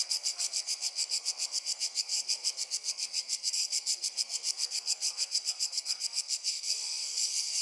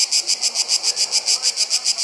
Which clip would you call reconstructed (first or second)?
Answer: first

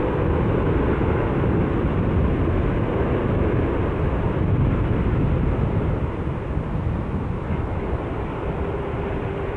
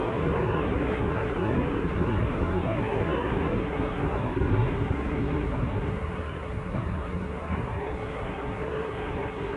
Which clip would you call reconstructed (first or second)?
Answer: second